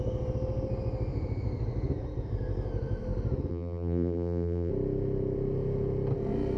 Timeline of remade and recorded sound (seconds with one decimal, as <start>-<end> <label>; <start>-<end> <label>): 0.0-3.5 recorded; 3.5-4.7 remade; 4.7-6.6 recorded